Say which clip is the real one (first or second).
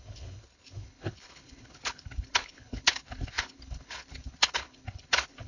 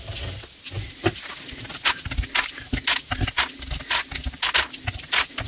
second